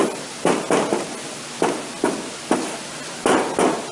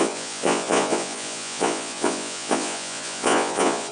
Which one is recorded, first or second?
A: first